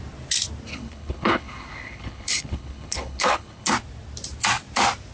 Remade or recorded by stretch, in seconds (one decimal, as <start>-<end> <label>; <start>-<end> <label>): 0.0-0.7 recorded; 0.7-3.7 remade; 3.7-5.1 recorded